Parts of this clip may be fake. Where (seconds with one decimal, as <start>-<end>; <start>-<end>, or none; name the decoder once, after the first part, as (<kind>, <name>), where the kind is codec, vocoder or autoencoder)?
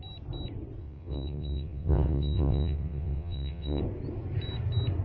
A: 0.8-3.8 (vocoder, WaveNeXt)